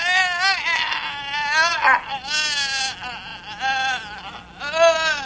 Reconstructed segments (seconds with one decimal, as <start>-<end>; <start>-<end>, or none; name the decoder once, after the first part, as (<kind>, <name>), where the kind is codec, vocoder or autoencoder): none